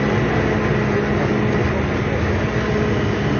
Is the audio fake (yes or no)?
no